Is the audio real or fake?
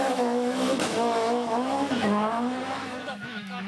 fake